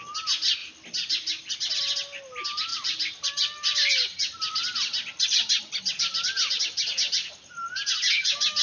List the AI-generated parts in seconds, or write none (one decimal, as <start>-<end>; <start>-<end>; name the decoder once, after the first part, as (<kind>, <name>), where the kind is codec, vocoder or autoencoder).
0.6-1.8 (vocoder, BigVGAN v2); 2.7-7.1